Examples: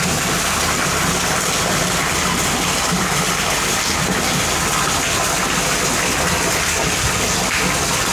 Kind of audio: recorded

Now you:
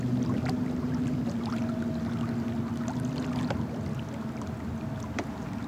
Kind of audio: recorded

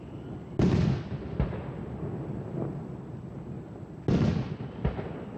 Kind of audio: recorded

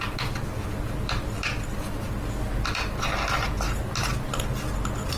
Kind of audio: recorded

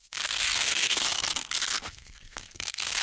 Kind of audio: remade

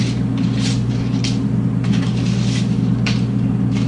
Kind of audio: recorded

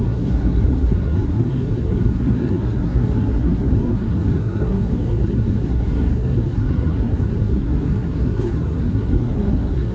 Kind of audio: remade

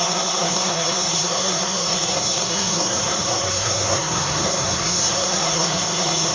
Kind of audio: remade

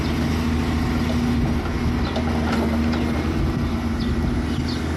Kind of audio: recorded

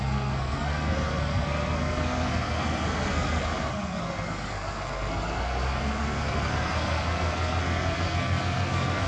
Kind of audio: remade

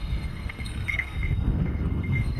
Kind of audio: remade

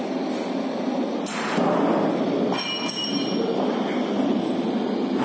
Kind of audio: recorded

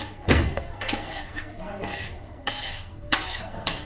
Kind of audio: remade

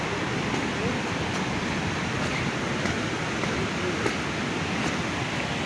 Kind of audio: recorded